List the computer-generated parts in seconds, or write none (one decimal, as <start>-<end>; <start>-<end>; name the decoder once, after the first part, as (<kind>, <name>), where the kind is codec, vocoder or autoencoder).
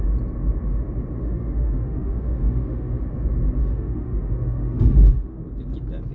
1.2-3.0 (autoencoder, DAC-VAE); 3.6-5.4